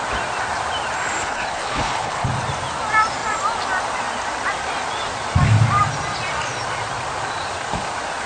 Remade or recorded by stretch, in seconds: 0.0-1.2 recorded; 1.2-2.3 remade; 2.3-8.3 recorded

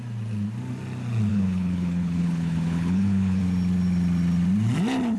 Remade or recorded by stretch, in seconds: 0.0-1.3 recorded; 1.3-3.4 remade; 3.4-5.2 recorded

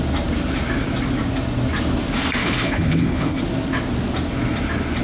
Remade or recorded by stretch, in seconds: 0.0-2.4 recorded; 2.4-3.4 remade; 3.4-5.0 recorded

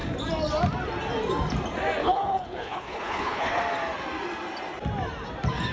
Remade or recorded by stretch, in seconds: 0.0-2.0 recorded; 2.0-3.6 remade; 3.6-5.7 recorded

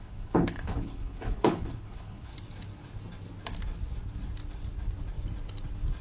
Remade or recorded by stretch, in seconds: 0.0-2.3 remade; 2.3-6.0 recorded

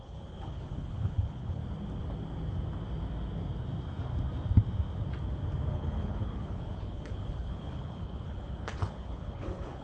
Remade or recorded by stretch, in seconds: 0.0-1.6 remade; 1.6-5.7 recorded; 5.7-9.8 remade

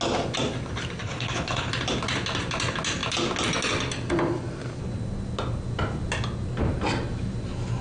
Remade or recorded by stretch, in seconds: 0.0-1.0 recorded; 1.0-1.7 remade; 1.7-7.8 recorded

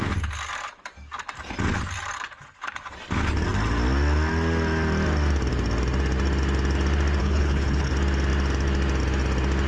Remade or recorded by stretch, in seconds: 0.0-7.2 recorded; 7.2-7.9 remade; 7.9-9.7 recorded